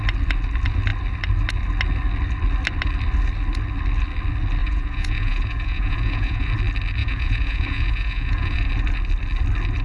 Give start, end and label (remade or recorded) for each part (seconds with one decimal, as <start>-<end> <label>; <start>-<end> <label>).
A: 0.0-4.6 recorded; 4.6-6.5 remade; 6.5-7.0 recorded; 7.0-8.7 remade; 8.7-9.8 recorded

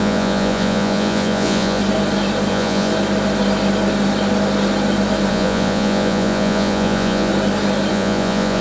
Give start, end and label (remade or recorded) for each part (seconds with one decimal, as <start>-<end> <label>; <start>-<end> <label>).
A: 0.0-1.8 remade; 1.8-2.5 recorded; 2.5-2.9 remade; 2.9-5.3 recorded; 5.3-7.3 remade; 7.3-7.9 recorded; 7.9-8.6 remade

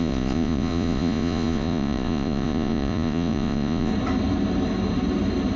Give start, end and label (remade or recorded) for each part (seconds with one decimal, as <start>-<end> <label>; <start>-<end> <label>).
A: 0.0-3.9 remade; 3.9-5.6 recorded

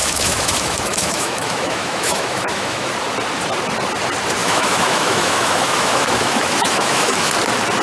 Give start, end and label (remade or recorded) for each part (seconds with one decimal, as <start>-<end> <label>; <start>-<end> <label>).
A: 0.0-2.9 remade; 2.9-4.4 recorded; 4.4-7.3 remade; 7.3-7.8 recorded

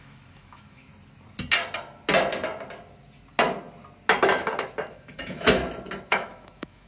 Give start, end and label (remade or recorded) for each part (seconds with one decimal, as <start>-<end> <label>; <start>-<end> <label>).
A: 0.0-0.9 remade; 0.9-4.9 recorded; 4.9-5.6 remade; 5.6-6.1 recorded; 6.1-6.9 remade

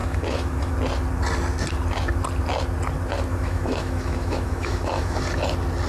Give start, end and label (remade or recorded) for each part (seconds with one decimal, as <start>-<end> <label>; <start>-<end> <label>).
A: 0.0-0.7 remade; 0.7-3.3 recorded; 3.3-5.2 remade; 5.2-5.9 recorded